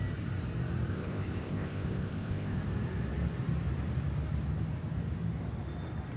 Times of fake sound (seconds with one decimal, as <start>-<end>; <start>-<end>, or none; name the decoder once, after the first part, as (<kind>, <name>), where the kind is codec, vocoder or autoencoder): 0.9-2.6 (codec, ZipCodec)